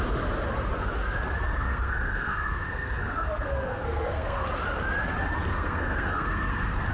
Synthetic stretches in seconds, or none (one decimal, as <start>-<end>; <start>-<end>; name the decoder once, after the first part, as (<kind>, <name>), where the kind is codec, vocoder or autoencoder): 1.5-4.4 (codec, SNAC); 5.5-6.9